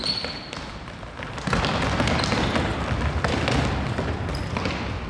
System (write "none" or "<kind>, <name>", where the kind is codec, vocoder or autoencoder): none